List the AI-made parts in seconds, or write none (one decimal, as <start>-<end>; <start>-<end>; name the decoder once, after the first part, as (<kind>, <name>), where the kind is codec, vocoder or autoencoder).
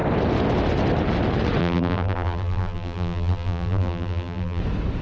1.6-4.6 (vocoder, BigVGAN v2)